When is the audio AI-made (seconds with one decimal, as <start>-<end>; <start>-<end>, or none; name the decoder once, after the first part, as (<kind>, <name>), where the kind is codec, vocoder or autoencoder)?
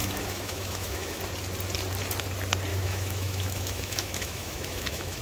0.0-1.2 (autoencoder, DAC-VAE); 2.7-5.2